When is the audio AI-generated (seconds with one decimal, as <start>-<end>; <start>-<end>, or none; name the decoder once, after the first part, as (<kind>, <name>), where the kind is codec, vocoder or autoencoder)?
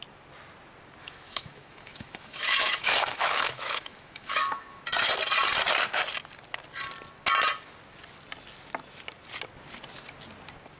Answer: 1.0-4.8 (autoencoder, DAC-VAE)